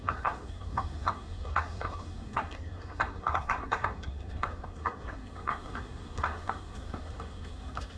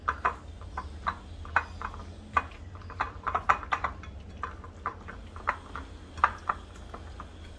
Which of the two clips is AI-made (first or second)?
first